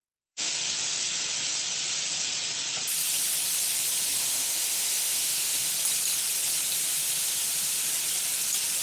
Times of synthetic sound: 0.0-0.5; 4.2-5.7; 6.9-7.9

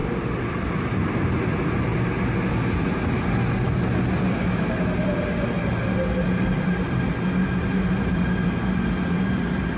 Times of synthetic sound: none